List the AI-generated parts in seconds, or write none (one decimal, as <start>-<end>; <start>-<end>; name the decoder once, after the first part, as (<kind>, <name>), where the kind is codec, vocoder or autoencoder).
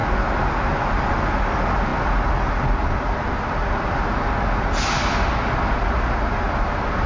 none